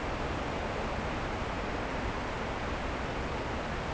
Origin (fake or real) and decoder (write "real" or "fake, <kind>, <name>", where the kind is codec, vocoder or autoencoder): real